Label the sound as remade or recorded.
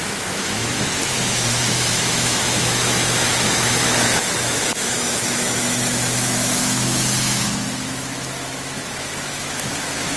remade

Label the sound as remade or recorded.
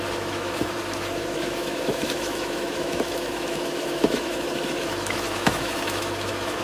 remade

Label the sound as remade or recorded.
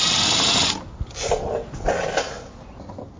recorded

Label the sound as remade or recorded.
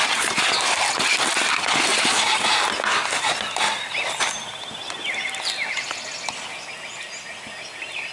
recorded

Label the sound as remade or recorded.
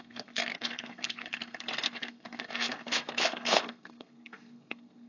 remade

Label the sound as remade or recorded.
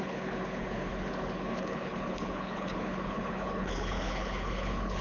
remade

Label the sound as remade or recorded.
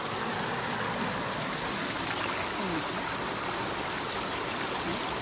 recorded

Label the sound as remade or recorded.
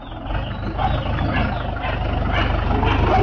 recorded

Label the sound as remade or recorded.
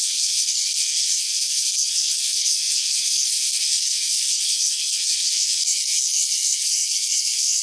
remade